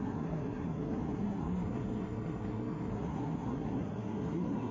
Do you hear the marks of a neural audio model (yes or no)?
yes